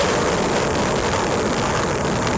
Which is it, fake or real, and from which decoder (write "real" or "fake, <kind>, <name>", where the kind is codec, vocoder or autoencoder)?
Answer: fake, vocoder, BigVGAN v2